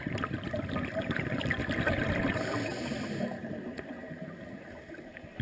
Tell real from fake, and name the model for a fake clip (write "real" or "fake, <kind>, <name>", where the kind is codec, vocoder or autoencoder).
real